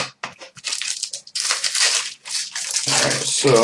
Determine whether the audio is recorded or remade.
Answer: recorded